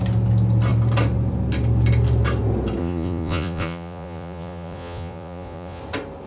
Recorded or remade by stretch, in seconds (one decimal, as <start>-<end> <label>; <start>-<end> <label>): 0.0-2.8 recorded; 2.8-5.8 remade; 5.8-6.3 recorded